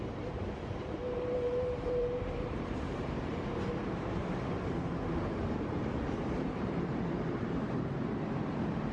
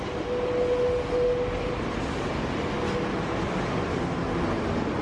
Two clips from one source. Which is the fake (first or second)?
first